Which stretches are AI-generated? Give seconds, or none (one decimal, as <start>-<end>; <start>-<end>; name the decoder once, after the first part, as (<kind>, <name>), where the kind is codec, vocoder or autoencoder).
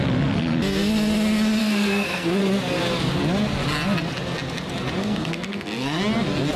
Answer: 1.6-2.4 (codec, SNAC); 5.0-6.0